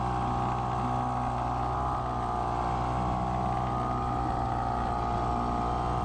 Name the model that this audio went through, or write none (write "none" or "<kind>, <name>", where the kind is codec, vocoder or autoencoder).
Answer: none